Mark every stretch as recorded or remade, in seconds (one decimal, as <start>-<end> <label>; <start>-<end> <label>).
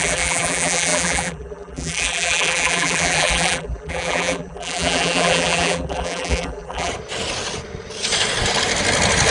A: 0.0-6.9 remade; 6.9-9.3 recorded